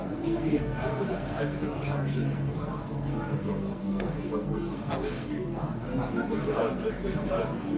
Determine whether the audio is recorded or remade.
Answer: remade